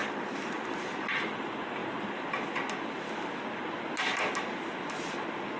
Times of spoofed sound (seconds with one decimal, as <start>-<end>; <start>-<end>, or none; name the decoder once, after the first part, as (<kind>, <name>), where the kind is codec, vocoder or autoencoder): none